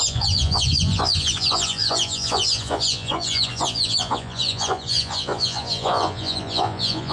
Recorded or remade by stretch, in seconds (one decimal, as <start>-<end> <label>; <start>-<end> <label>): 0.0-7.1 remade